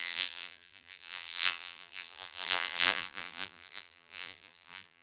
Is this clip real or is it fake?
fake